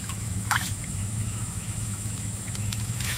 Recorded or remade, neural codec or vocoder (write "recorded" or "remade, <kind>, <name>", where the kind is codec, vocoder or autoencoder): remade, autoencoder, DAC-VAE